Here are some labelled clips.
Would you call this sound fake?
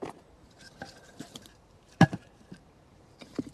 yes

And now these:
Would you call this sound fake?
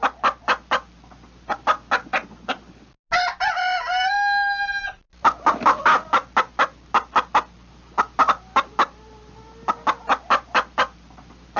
no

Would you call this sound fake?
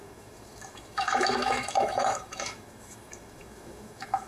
yes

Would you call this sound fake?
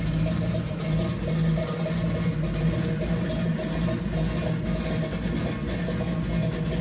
no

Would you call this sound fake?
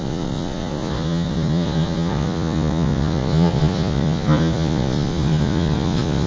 yes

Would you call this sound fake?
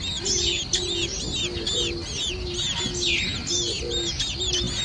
no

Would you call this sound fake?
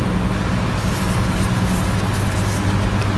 no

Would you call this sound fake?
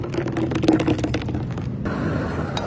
no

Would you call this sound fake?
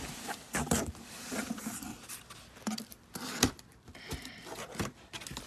yes